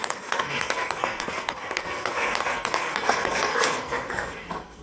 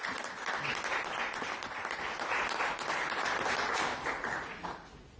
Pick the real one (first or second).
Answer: second